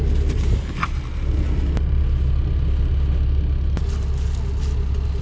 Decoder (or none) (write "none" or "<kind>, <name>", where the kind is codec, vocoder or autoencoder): none